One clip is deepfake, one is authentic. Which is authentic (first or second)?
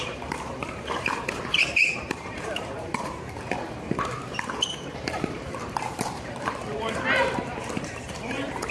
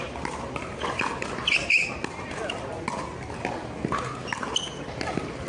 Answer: second